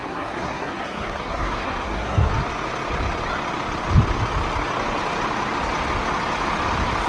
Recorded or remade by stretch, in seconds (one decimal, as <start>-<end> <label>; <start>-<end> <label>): 0.0-2.3 remade; 2.3-7.1 recorded